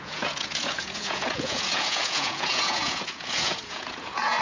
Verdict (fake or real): fake